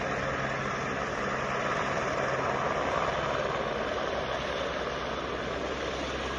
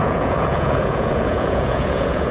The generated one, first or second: second